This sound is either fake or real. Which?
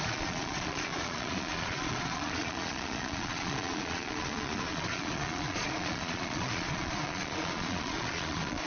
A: fake